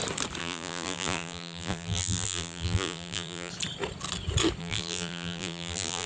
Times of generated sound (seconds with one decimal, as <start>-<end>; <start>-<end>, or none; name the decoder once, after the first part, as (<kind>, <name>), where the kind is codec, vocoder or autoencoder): 0.4-3.5 (vocoder, BigVGAN v2); 4.6-6.1